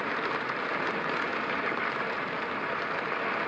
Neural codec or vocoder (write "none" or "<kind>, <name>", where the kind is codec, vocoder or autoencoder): vocoder, BigVGAN v2